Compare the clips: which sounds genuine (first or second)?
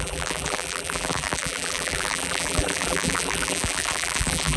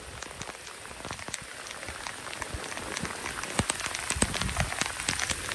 second